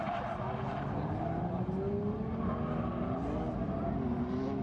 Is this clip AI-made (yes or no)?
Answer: no